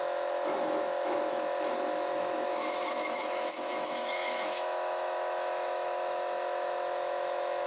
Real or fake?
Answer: fake